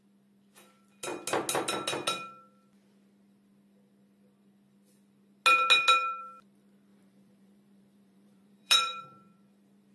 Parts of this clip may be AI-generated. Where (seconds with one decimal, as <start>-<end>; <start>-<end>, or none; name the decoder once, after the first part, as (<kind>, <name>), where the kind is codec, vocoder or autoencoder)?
6.9-9.0 (vocoder, BigVGAN v2)